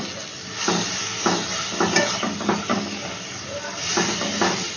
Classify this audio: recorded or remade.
recorded